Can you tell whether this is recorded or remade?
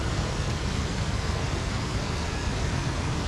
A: remade